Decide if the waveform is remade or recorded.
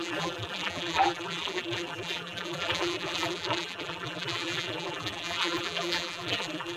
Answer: remade